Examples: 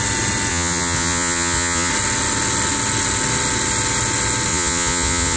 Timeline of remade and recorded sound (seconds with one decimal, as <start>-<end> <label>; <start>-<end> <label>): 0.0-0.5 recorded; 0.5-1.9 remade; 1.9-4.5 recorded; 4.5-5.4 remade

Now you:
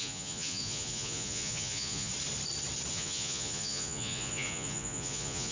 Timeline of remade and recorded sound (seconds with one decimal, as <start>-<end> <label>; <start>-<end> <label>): 0.0-2.1 remade; 2.1-2.9 recorded; 2.9-5.5 remade

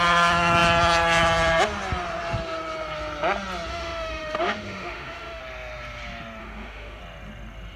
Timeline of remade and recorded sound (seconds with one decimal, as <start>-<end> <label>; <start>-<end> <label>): 0.0-3.7 recorded; 3.7-5.4 remade; 5.4-6.4 recorded; 6.4-7.0 remade; 7.0-7.8 recorded

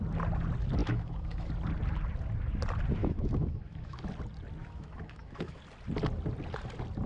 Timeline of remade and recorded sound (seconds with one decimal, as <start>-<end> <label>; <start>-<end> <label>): 0.0-0.8 recorded; 0.8-1.5 remade; 1.5-3.0 recorded; 3.0-4.0 remade; 4.0-4.6 recorded; 4.6-5.6 remade; 5.6-7.1 recorded